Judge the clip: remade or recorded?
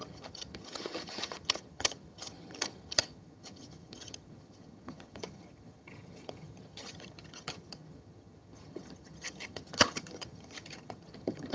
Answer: remade